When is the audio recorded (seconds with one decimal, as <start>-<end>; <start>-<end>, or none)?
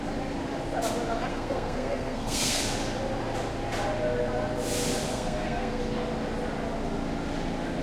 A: 0.0-1.3; 2.6-5.1; 5.8-7.8